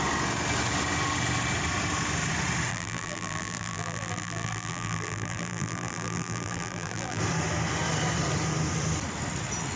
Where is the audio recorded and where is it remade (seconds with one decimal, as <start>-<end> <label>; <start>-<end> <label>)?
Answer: 0.0-2.7 recorded; 2.7-7.2 remade; 7.2-9.8 recorded

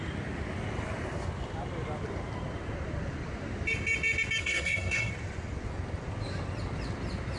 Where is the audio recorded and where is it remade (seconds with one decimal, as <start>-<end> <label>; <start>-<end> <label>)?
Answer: 0.0-4.4 recorded; 4.4-5.1 remade; 5.1-7.4 recorded

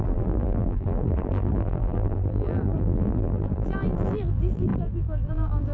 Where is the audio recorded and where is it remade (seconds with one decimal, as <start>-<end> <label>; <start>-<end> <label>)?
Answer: 0.0-5.7 remade

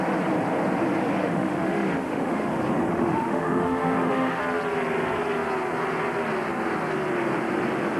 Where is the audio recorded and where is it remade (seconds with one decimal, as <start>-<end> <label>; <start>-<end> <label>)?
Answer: 0.0-1.2 recorded; 1.2-2.5 remade; 2.5-2.9 recorded; 2.9-4.4 remade; 4.4-8.0 recorded

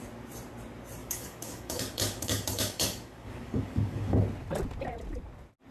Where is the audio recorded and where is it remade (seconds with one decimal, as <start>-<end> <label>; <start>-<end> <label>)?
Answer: 0.0-1.0 recorded; 1.0-4.2 remade; 4.2-5.7 recorded

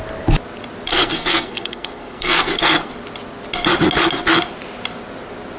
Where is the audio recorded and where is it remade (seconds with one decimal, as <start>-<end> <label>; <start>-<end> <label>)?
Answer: 0.0-0.9 recorded; 0.9-2.9 remade; 2.9-5.6 recorded

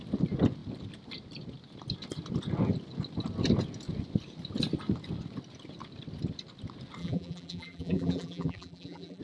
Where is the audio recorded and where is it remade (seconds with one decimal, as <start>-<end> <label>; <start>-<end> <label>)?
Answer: 0.0-7.0 recorded; 7.0-9.2 remade